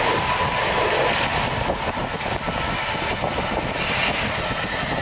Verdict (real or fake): real